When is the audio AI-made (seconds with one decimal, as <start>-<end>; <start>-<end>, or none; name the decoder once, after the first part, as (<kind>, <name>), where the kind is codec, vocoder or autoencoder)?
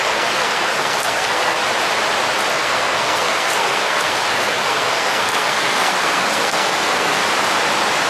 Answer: 0.0-1.6 (codec, SNAC); 2.5-7.2